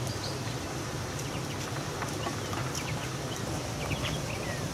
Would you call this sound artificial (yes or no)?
no